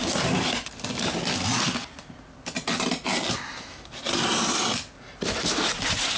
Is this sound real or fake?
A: real